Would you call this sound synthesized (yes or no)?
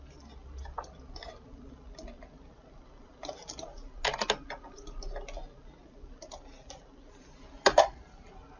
no